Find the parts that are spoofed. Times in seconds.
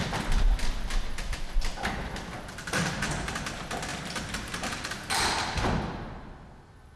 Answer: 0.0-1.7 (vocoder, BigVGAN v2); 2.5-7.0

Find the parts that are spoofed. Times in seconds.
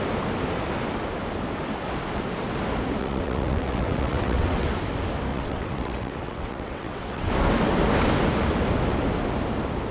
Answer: 3.0-4.7 (vocoder, WaveNeXt); 5.3-7.3